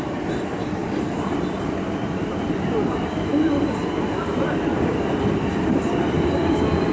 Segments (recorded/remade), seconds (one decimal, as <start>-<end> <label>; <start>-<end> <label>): 0.0-6.9 remade